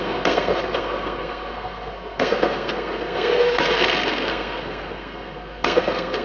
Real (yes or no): no